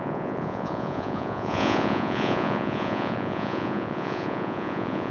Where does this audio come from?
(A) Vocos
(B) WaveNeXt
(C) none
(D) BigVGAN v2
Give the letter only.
A